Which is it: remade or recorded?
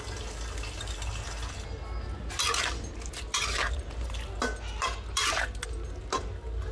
recorded